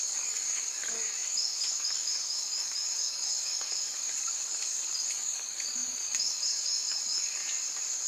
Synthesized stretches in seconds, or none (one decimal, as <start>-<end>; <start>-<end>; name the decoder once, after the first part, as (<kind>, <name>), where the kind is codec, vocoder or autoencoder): 0.0-7.4 (codec, DAC)